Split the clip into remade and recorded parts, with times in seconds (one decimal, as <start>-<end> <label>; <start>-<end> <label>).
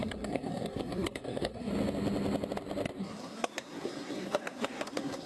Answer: 0.0-1.7 remade; 1.7-3.0 recorded; 3.0-5.3 remade